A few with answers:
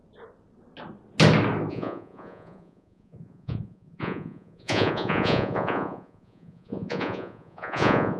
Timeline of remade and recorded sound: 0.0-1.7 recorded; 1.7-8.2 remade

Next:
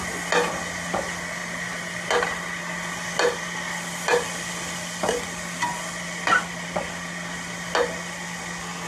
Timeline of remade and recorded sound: 0.0-8.9 recorded

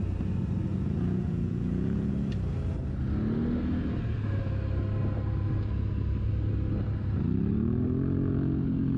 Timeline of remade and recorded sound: 0.0-0.7 recorded; 0.7-2.1 remade; 2.1-9.0 recorded

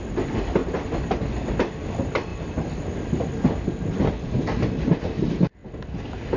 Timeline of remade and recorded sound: 0.0-6.4 recorded

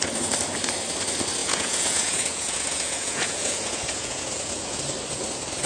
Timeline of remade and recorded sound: 0.0-1.4 recorded; 1.4-4.8 remade; 4.8-5.7 recorded

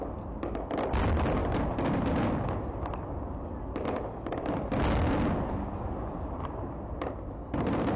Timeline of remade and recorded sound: 0.0-8.0 recorded

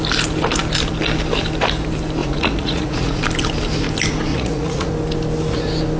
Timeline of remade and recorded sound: 0.0-2.2 recorded; 2.2-3.2 remade; 3.2-4.3 recorded; 4.3-4.9 remade; 4.9-6.0 recorded